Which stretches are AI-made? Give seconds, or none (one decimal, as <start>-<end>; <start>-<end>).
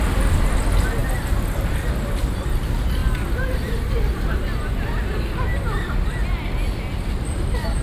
none